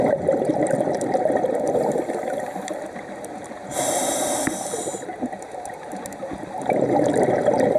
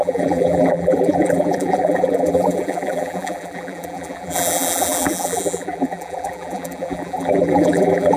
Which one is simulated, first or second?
second